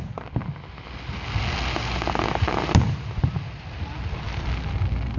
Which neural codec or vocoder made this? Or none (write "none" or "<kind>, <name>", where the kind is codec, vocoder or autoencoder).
none